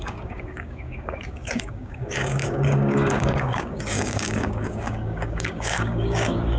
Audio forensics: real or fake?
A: fake